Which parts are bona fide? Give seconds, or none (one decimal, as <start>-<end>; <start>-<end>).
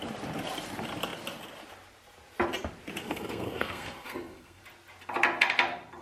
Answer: 0.0-3.0; 4.6-6.0